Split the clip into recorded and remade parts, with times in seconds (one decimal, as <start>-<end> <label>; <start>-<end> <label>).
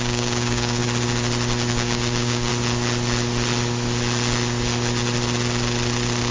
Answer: 0.0-0.8 remade; 0.8-1.7 recorded; 1.7-2.5 remade; 2.5-6.3 recorded